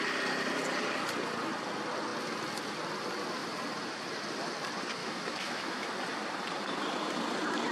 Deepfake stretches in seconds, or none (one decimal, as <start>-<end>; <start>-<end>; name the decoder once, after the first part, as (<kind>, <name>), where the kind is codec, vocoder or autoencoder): 5.0-5.9 (autoencoder, DAC-VAE)